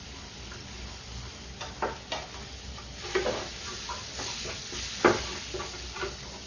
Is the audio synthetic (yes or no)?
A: no